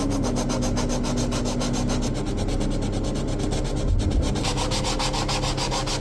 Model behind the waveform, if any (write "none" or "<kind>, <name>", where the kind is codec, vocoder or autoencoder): none